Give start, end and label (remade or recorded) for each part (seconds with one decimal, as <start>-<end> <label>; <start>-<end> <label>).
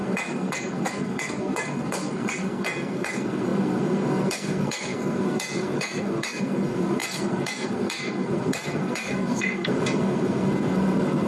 0.0-11.3 remade